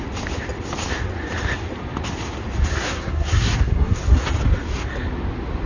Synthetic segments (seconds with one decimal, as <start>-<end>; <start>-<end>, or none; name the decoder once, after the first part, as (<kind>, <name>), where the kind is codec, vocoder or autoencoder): 2.7-4.2 (codec, SNAC)